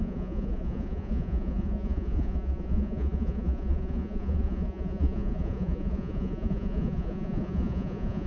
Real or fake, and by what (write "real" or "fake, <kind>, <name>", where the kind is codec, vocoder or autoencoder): fake, vocoder, Vocos